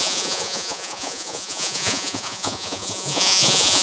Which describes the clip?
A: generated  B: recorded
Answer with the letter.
A